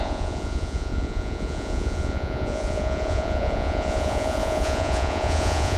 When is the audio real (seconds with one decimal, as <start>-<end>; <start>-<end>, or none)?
none